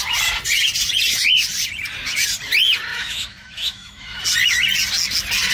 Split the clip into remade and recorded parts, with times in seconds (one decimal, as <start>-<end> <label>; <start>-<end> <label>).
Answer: 0.0-2.9 recorded; 2.9-4.2 remade; 4.2-5.5 recorded